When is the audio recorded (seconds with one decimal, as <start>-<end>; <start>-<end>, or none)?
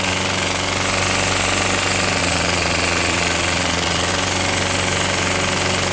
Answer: 0.0-2.2; 4.1-5.9